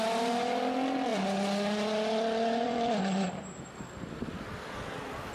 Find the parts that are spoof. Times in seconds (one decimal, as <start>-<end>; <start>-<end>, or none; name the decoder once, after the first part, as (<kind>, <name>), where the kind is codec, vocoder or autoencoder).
1.1-4.1 (vocoder, BigVGAN v2)